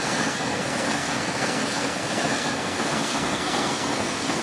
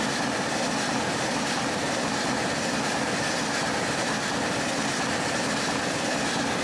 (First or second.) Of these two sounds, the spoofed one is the first